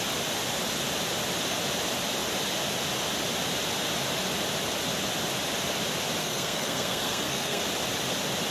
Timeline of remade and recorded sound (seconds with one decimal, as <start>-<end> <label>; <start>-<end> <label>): 0.0-6.2 recorded; 6.2-7.6 remade; 7.6-8.5 recorded